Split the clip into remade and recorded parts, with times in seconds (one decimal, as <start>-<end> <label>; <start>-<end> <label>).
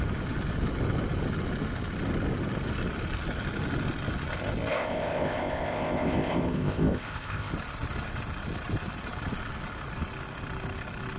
0.0-4.7 recorded; 4.7-7.5 remade; 7.5-11.2 recorded